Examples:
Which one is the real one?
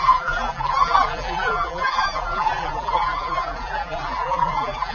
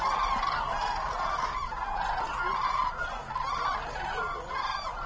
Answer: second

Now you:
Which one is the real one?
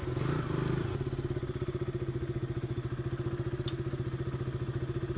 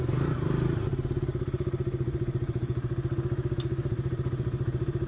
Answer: first